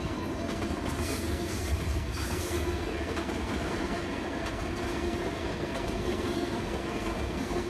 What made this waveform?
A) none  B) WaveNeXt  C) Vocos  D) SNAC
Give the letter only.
D